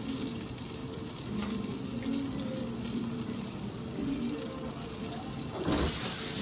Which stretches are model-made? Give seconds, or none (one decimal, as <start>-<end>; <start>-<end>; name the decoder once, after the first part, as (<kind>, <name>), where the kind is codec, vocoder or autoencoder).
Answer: 0.8-1.7 (vocoder, BigVGAN v2)

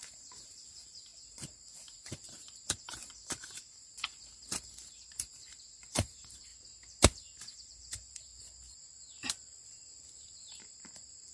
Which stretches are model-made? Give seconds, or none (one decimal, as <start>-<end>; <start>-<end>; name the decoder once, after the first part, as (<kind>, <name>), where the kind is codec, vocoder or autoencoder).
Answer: 0.0-6.5 (vocoder, BigVGAN v2); 7.4-8.3; 10.4-11.3

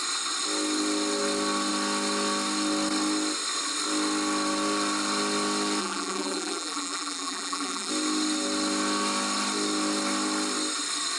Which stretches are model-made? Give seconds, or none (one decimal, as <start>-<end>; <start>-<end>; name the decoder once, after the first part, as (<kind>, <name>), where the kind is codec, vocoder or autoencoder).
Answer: 5.8-7.9 (vocoder, BigVGAN v2)

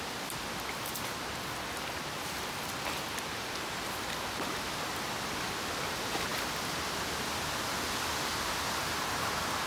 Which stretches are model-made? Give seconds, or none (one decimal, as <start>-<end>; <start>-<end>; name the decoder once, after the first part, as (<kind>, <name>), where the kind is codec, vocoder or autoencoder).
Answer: none

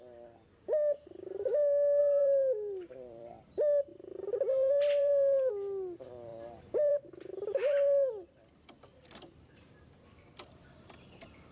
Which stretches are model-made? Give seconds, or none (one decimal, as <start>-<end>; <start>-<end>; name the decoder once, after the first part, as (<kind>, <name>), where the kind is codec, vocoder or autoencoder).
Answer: 2.0-3.5 (vocoder, BigVGAN v2); 3.9-5.5; 6.3-9.4

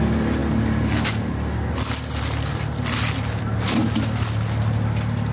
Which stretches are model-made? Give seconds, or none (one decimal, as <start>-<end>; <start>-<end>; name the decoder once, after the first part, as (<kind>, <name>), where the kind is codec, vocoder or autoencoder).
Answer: none

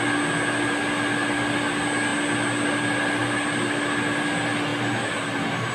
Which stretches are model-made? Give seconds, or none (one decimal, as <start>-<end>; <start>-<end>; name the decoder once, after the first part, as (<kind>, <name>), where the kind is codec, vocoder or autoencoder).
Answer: none